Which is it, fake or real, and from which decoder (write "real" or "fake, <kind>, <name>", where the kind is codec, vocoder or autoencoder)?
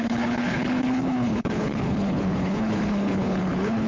fake, codec, HILCodec